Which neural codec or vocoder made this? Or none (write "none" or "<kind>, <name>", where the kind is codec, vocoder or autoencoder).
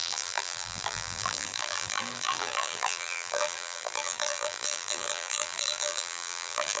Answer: vocoder, BigVGAN v2